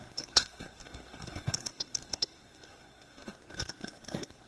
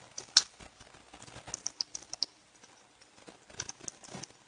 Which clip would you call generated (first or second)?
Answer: first